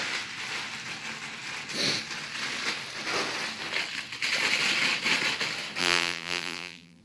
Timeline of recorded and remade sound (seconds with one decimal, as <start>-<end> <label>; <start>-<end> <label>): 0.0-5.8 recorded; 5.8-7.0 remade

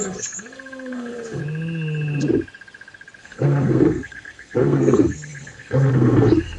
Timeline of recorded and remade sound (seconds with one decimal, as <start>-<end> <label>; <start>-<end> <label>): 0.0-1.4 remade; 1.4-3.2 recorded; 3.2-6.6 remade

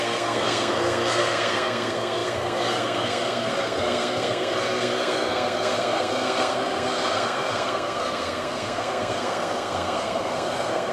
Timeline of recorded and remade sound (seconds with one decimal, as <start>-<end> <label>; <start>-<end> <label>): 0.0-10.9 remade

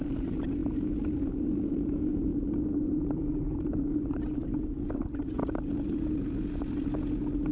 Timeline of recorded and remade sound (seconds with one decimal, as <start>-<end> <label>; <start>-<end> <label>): 0.0-0.6 remade; 0.6-1.7 recorded; 1.7-2.3 remade; 2.3-3.0 recorded; 3.0-4.4 remade; 4.4-5.0 recorded; 5.0-5.4 remade; 5.4-7.5 recorded

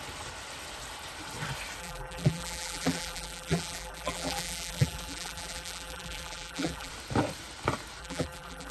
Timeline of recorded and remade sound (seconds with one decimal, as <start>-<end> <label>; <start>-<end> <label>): 0.0-1.8 recorded; 1.8-6.9 remade; 6.9-8.0 recorded; 8.0-8.7 remade

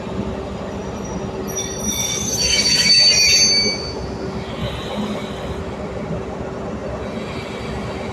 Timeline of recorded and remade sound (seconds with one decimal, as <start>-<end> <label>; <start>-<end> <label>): 0.0-2.0 recorded; 2.0-3.0 remade; 3.0-4.6 recorded; 4.6-5.6 remade; 5.6-8.1 recorded

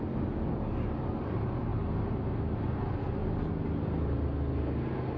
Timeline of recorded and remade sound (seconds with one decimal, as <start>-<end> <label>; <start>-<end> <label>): 0.0-5.2 recorded